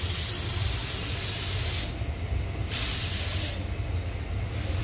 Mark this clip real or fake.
real